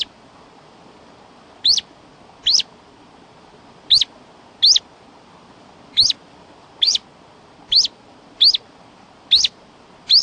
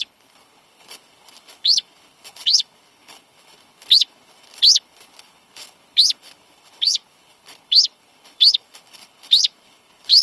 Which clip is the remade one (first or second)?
second